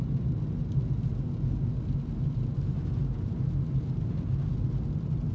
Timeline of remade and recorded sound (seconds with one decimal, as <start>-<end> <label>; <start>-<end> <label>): 0.0-5.3 recorded